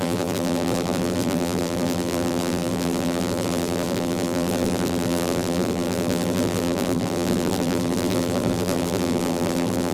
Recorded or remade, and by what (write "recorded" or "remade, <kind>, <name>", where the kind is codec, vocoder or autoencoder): remade, vocoder, BigVGAN v2